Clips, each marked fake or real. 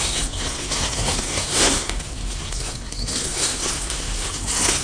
fake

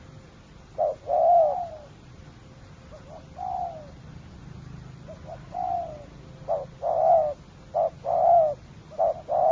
real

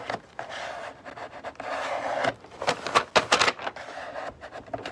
real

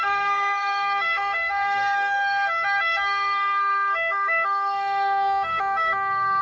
fake